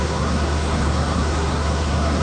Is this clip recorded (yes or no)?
no